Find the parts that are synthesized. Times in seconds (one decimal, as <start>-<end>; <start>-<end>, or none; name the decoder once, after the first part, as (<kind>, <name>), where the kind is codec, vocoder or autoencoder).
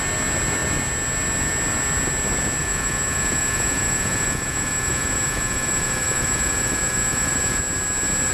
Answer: 2.6-7.6 (vocoder, Vocos)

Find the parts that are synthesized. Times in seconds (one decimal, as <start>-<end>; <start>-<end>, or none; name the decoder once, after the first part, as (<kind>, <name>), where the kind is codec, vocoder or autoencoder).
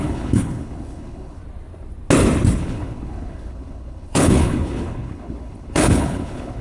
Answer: 0.0-1.4 (codec, HILCodec); 2.6-6.6